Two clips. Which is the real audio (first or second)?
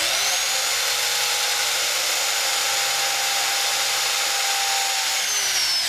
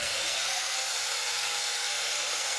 first